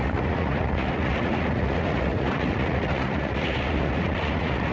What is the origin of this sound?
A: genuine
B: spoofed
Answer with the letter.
B